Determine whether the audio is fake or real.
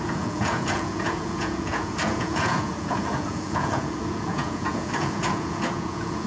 fake